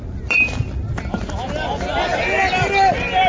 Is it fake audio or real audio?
real